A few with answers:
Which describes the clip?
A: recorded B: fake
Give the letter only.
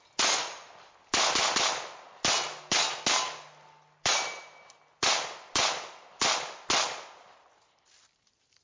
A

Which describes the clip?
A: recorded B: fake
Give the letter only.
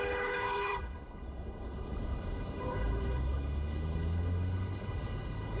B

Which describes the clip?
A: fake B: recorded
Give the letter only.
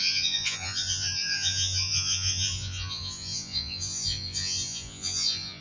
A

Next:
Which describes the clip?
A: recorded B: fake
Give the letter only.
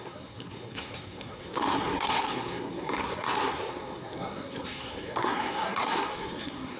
B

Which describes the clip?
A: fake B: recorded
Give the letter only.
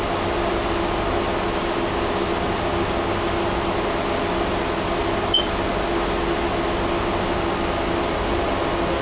B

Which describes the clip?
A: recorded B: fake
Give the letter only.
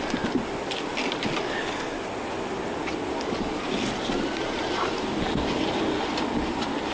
A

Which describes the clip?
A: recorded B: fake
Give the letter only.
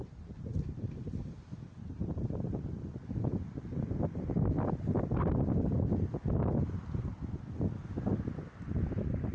A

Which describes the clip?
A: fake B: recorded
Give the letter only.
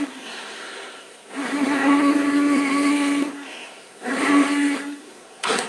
A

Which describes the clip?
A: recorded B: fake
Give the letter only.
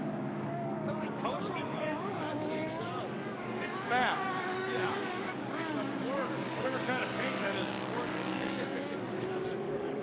B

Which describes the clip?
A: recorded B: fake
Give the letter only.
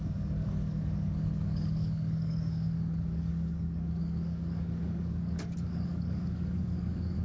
B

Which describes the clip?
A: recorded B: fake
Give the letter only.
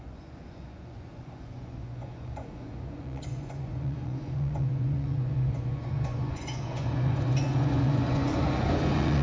B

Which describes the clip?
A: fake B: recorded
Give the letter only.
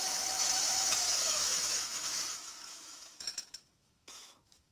A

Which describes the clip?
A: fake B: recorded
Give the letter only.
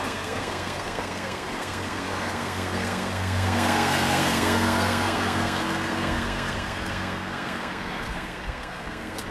A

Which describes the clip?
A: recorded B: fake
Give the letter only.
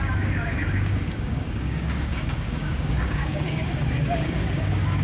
B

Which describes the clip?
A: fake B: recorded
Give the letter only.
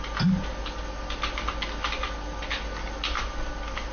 B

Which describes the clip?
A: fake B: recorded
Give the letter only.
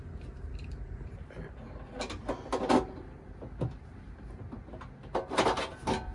B